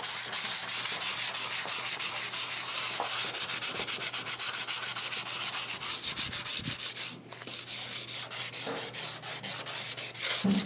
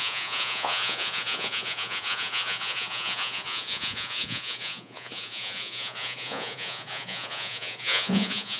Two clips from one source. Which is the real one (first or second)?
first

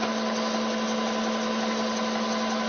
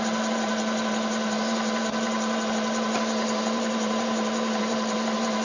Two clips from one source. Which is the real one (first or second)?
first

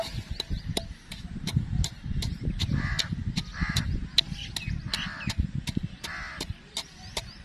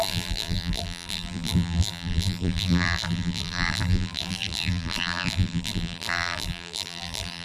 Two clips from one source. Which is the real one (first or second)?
first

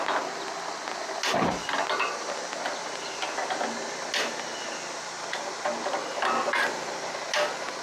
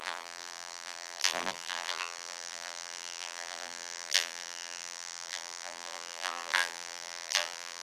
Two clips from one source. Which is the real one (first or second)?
first